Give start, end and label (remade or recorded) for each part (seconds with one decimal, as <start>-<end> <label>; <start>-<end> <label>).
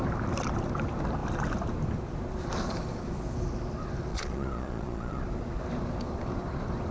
0.0-4.1 recorded; 4.1-5.2 remade; 5.2-6.9 recorded